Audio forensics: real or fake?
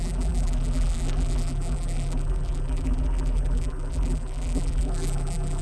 fake